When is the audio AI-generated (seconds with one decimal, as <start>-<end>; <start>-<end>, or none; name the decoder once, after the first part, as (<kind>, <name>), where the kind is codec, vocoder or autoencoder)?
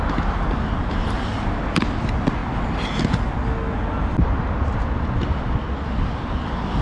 none